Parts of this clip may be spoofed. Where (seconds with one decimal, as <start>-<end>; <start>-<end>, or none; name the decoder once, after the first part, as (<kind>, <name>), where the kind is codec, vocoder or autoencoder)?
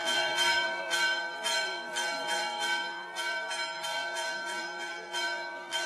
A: 0.0-3.5 (vocoder, BigVGAN v2); 3.9-5.9